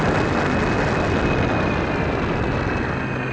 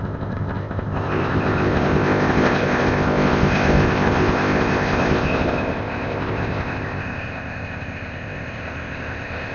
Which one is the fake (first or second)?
second